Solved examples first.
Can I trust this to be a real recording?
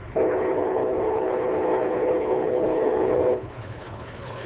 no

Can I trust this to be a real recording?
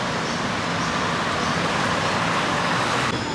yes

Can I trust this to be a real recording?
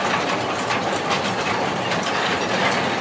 yes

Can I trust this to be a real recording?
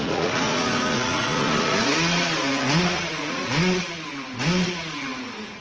no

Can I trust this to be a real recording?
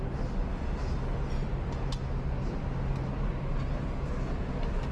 yes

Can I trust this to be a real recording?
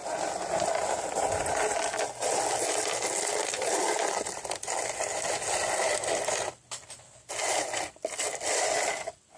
yes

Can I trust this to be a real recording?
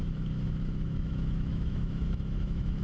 no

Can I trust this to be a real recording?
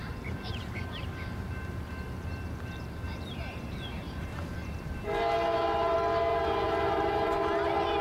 no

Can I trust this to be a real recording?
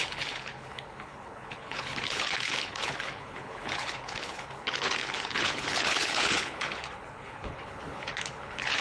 no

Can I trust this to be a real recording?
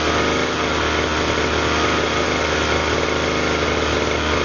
yes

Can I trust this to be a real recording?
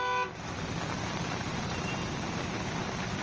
yes